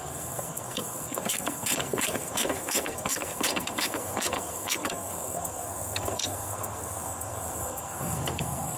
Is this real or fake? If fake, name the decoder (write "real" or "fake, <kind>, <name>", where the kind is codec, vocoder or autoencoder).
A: fake, codec, SNAC